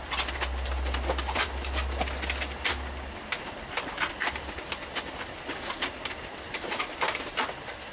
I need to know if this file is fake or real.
real